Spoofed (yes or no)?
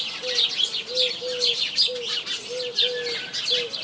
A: no